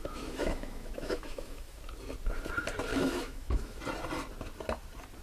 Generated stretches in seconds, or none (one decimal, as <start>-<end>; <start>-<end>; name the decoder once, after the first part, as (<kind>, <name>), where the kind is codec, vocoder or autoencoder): 0.0-1.8 (autoencoder, DAC-VAE); 2.9-3.8